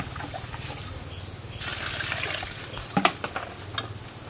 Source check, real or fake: real